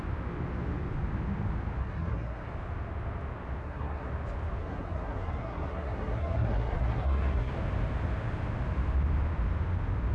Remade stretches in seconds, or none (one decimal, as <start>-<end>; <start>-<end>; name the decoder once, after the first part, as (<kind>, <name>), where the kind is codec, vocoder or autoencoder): 1.8-2.5 (codec, SNAC); 3.6-4.1; 4.6-7.5